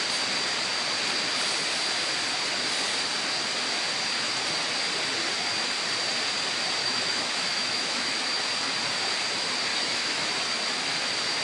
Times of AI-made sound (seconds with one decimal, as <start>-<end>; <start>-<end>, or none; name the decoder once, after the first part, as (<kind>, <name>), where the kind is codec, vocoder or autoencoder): 6.8-8.4 (autoencoder, DAC-VAE); 9.7-10.3